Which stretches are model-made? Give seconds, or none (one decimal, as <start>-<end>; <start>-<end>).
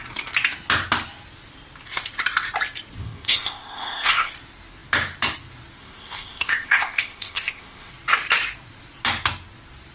3.0-4.3; 5.8-7.9